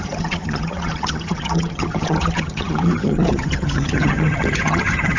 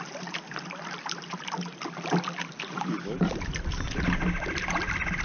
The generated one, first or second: first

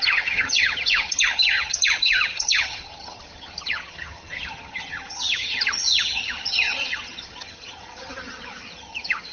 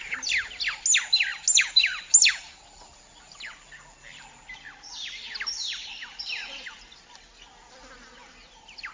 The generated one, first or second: first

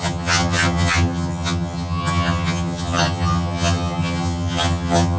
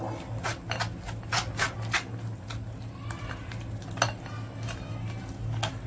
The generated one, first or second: first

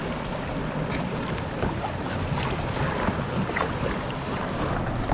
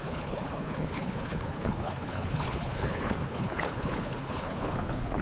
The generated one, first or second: second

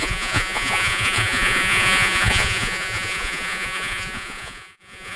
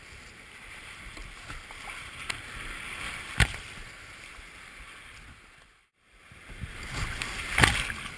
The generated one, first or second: first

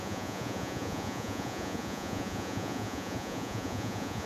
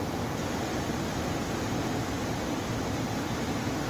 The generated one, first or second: first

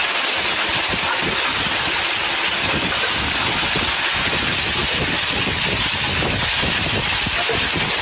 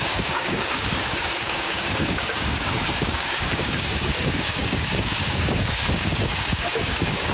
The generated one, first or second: second